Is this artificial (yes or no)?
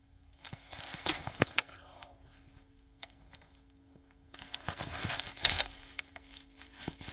yes